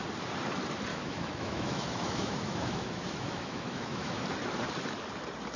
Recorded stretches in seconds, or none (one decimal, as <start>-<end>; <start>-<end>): 0.0-0.9; 4.2-5.6